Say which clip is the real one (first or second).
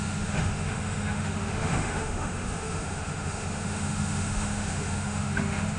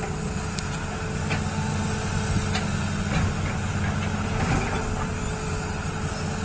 second